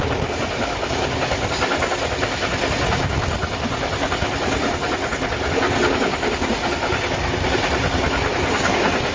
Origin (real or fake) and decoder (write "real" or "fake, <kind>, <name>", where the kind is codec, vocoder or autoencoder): real